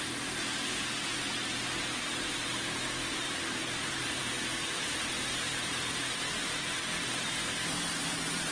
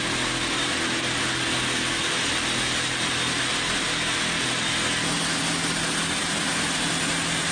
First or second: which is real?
second